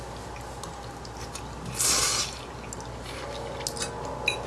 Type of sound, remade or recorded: recorded